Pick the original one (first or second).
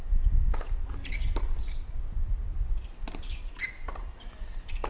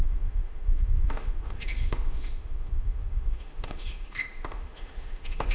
first